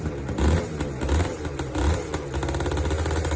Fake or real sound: real